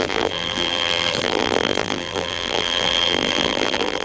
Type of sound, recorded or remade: remade